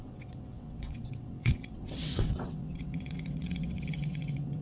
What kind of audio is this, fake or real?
fake